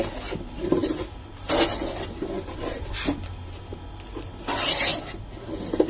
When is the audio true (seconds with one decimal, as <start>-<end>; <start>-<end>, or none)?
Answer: 0.0-5.9